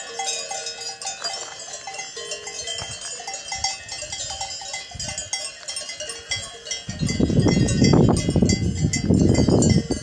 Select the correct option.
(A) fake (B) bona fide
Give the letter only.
B